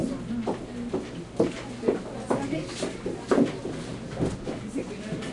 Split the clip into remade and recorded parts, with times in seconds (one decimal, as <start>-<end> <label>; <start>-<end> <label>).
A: 0.0-5.3 recorded